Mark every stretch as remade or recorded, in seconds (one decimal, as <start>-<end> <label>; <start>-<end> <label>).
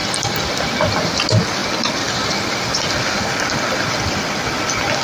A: 0.0-5.0 recorded